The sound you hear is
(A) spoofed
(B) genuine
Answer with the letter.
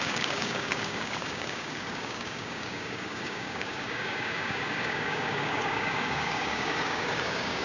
A